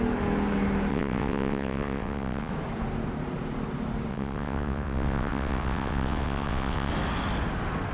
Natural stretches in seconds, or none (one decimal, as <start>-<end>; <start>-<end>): 0.0-0.9; 2.5-4.1; 6.9-7.9